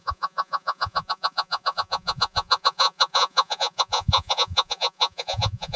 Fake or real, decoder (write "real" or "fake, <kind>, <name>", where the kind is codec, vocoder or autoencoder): fake, vocoder, Vocos